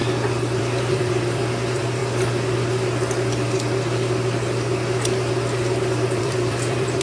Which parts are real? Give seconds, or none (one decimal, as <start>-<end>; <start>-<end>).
0.0-0.6; 2.0-6.2